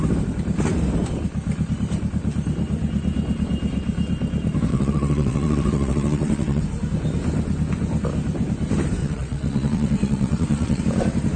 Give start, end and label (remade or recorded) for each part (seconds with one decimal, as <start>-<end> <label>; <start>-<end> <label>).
0.0-4.7 recorded; 4.7-6.6 remade; 6.6-9.0 recorded; 9.0-10.8 remade; 10.8-11.4 recorded